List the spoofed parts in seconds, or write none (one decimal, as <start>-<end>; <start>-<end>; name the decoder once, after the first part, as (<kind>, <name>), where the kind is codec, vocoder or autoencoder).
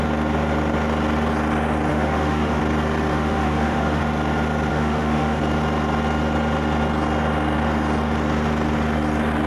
1.9-2.6 (autoencoder, DAC-VAE); 3.1-4.0; 4.7-5.4